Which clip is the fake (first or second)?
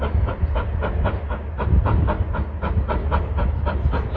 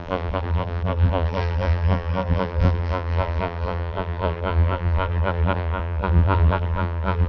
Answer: second